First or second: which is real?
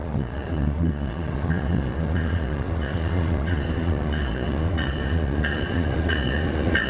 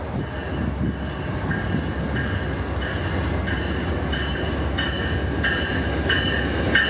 second